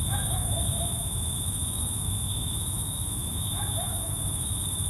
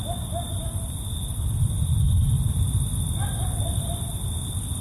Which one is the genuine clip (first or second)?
second